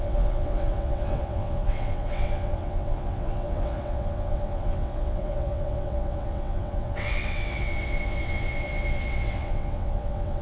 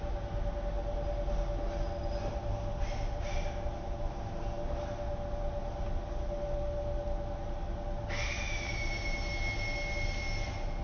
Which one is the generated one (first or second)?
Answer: first